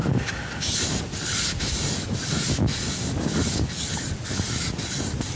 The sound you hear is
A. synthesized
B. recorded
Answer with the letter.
B